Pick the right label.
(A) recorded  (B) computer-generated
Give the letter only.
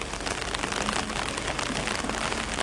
A